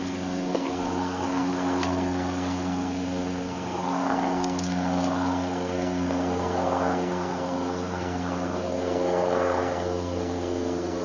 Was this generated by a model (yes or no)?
yes